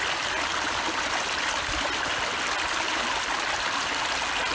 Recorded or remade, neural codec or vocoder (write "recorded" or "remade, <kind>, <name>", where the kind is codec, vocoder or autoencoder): recorded